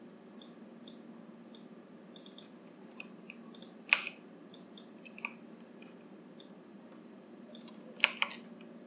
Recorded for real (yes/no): yes